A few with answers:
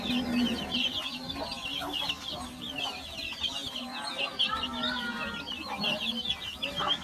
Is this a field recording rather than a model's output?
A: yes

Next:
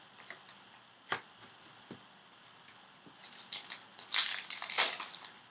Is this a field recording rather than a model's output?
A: yes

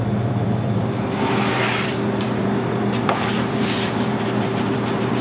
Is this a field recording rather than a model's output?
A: no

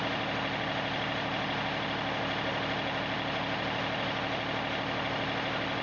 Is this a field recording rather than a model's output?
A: yes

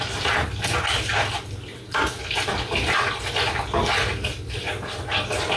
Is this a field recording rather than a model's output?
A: yes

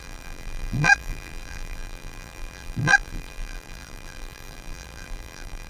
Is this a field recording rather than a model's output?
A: no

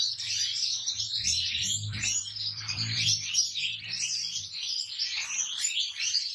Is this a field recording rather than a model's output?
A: no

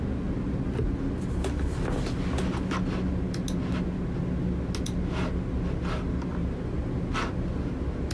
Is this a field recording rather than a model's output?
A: yes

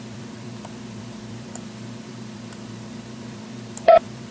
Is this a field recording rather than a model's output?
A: no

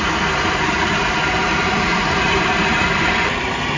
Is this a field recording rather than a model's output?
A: no